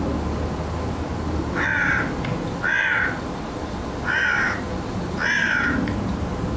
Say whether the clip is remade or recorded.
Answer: recorded